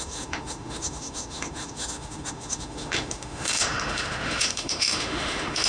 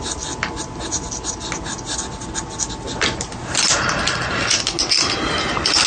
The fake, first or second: first